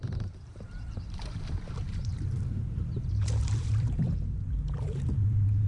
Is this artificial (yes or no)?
yes